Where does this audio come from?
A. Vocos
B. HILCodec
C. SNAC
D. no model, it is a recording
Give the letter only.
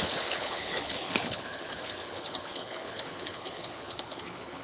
B